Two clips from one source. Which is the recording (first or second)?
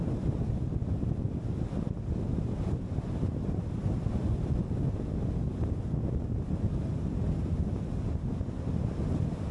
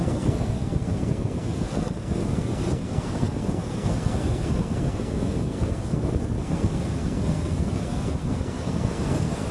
first